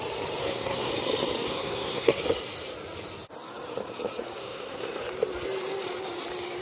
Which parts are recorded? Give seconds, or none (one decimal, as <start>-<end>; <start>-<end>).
0.0-0.4; 0.9-1.5; 2.2-4.4; 5.0-6.6